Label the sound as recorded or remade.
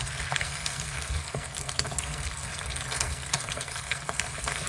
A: remade